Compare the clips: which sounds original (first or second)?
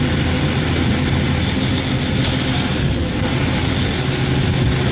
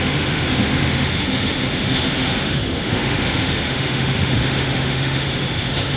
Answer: first